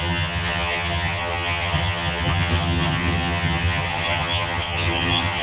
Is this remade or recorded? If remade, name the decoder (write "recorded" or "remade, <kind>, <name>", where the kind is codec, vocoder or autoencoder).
remade, vocoder, HiFi-GAN